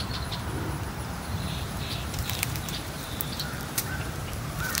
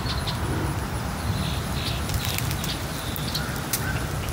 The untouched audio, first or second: second